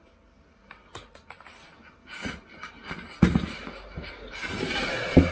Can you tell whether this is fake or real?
real